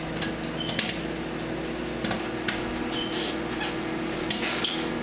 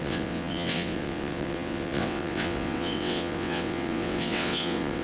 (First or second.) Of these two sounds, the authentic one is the first